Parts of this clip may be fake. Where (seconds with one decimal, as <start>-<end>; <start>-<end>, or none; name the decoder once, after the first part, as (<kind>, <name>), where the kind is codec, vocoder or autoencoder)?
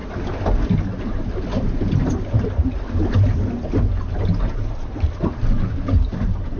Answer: none